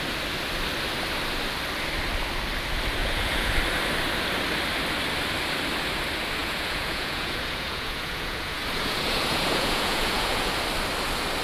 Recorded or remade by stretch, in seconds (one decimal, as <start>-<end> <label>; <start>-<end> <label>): 0.0-3.0 recorded; 3.0-3.5 remade; 3.5-6.4 recorded; 6.4-10.5 remade; 10.5-11.4 recorded

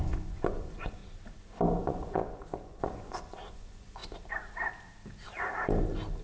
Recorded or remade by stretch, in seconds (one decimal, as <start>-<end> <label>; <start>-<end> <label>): 0.0-1.0 remade; 1.0-1.8 recorded; 1.8-4.0 remade; 4.0-6.2 recorded